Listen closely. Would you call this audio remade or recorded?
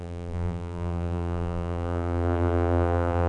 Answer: remade